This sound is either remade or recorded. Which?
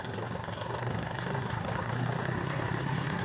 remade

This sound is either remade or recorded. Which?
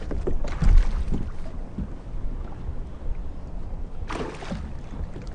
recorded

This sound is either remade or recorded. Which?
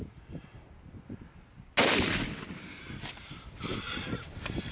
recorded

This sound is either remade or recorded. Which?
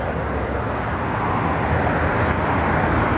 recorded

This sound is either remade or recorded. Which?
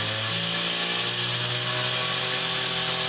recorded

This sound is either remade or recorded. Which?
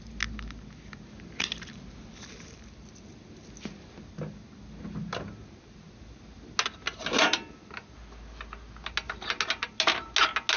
recorded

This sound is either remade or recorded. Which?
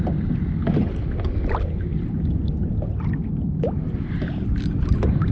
recorded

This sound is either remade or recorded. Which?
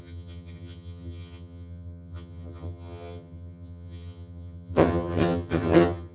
remade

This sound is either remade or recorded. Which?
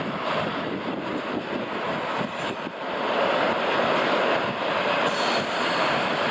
recorded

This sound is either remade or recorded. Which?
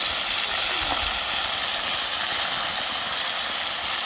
recorded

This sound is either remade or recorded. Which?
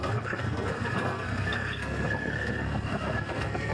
remade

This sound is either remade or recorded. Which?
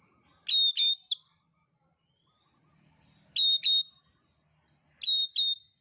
recorded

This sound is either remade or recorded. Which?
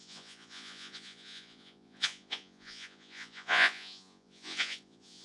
remade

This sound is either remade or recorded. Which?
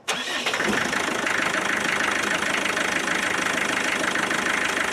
recorded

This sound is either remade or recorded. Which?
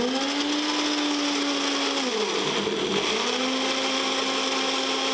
recorded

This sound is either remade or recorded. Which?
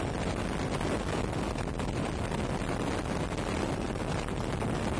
recorded